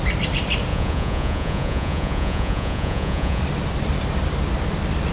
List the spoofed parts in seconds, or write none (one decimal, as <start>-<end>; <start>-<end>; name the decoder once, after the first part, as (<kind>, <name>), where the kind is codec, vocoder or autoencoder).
0.7-3.4 (vocoder, Vocos)